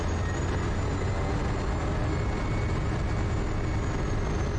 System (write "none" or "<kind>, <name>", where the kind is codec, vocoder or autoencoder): none